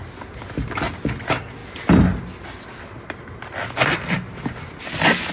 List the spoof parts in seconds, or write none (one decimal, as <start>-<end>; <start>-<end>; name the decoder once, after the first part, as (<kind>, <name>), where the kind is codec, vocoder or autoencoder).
none